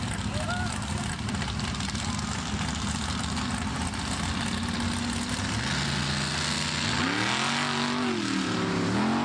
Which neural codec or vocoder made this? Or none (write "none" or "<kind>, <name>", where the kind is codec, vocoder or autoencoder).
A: none